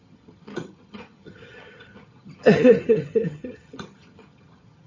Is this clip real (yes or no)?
no